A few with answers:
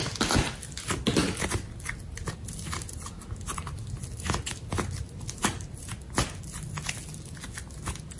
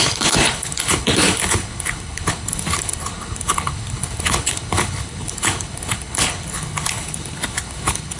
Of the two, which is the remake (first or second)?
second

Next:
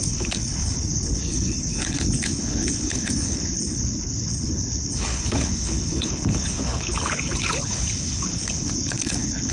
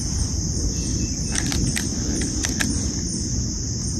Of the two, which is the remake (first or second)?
first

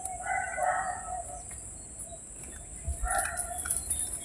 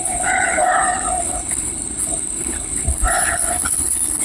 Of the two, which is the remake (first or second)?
second